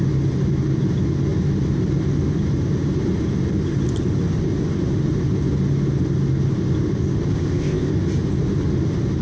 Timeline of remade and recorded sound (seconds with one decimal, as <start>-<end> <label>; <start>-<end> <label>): 0.0-7.3 recorded; 7.3-7.9 remade; 7.9-9.2 recorded